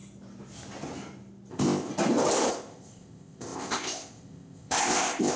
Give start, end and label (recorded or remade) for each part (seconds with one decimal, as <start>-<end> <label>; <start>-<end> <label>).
0.0-1.5 recorded; 1.5-1.9 remade; 1.9-2.5 recorded; 2.5-5.4 remade

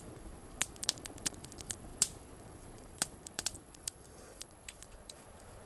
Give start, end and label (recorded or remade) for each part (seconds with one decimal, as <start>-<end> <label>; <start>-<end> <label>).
0.0-5.7 remade

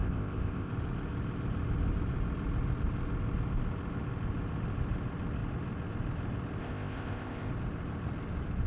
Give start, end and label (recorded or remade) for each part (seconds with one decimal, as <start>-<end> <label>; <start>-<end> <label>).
0.0-0.7 remade; 0.7-6.6 recorded; 6.6-7.5 remade; 7.5-8.7 recorded

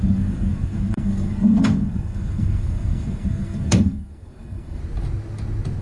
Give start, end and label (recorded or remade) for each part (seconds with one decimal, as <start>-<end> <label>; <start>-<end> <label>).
0.0-4.8 remade; 4.8-5.8 recorded